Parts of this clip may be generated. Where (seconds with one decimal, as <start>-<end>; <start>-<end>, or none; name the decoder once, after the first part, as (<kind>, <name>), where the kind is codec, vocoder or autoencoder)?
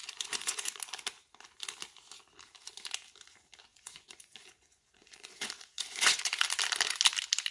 0.0-0.8 (vocoder, Vocos); 3.7-6.3